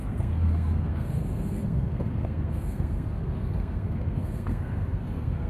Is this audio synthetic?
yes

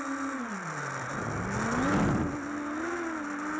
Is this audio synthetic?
no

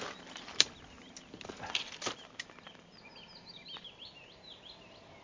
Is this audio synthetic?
no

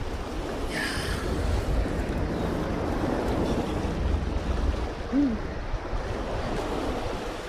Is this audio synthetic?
no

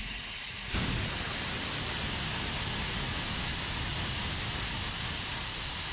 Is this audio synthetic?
no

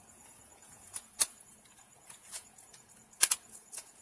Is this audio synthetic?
yes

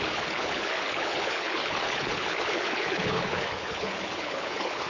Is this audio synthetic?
yes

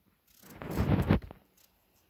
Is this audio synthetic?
no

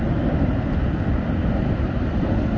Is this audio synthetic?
no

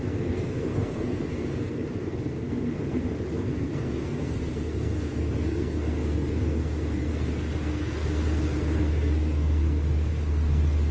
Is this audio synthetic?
yes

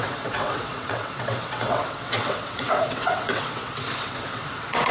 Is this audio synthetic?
yes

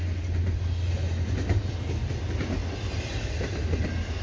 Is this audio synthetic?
no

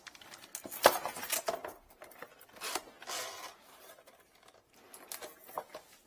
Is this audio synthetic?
no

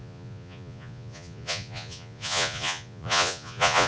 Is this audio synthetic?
yes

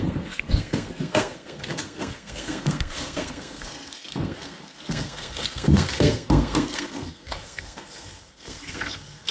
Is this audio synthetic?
yes